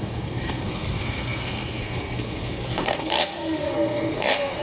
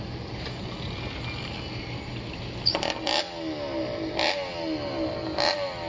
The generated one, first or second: first